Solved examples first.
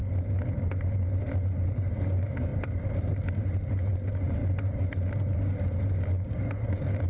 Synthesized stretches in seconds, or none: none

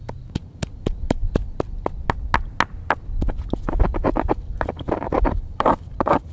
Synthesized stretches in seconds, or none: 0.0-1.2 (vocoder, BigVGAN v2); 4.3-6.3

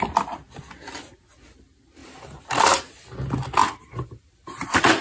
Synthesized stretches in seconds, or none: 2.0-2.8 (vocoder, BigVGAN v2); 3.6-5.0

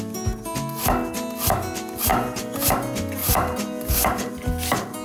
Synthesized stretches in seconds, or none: 2.1-2.7 (vocoder, BigVGAN v2); 3.2-4.3